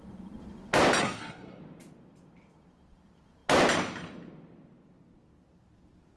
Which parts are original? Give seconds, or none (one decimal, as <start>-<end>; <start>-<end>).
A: 0.0-1.0; 1.6-6.2